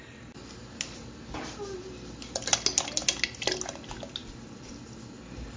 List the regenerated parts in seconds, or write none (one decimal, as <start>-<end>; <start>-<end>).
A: none